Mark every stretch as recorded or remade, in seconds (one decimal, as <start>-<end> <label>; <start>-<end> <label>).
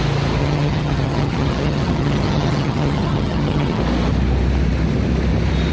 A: 0.0-0.4 recorded; 0.4-3.8 remade; 3.8-5.7 recorded